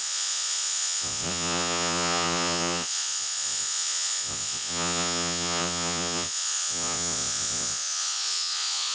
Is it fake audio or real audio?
fake